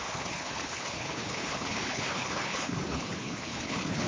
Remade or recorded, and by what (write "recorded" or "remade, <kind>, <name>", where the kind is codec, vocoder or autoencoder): remade, codec, HILCodec